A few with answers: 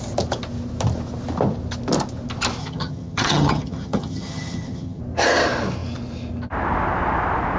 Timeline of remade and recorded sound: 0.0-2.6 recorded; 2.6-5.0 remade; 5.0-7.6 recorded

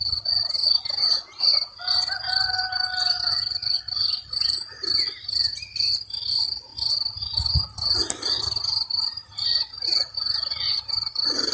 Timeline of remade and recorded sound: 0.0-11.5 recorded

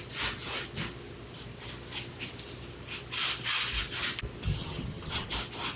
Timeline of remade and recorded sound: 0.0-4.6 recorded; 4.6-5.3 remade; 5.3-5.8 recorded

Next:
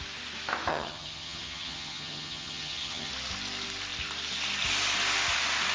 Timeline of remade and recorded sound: 0.0-0.7 recorded; 0.7-3.1 remade; 3.1-5.7 recorded

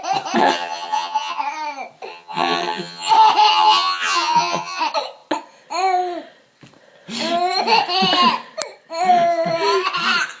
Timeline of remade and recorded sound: 0.0-0.4 recorded; 0.4-1.4 remade; 1.4-2.1 recorded; 2.1-3.1 remade; 3.1-3.5 recorded; 3.5-4.8 remade; 4.8-10.4 recorded

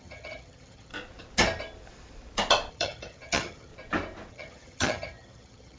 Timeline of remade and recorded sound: 0.0-0.9 remade; 0.9-2.7 recorded; 2.7-3.7 remade; 3.7-4.3 recorded; 4.3-5.8 remade

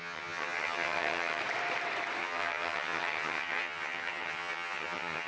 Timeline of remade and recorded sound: 0.0-1.4 remade; 1.4-2.2 recorded; 2.2-5.3 remade

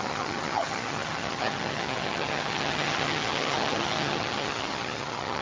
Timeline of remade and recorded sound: 0.0-5.4 remade